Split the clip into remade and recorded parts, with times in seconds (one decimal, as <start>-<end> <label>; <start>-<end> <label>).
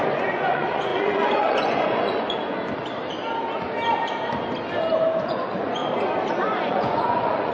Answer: 0.0-2.5 remade; 2.5-5.2 recorded; 5.2-5.8 remade; 5.8-6.4 recorded; 6.4-7.5 remade